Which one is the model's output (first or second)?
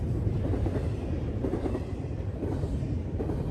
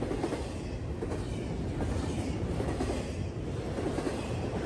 first